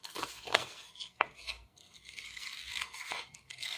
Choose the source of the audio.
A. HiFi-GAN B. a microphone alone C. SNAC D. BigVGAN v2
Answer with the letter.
C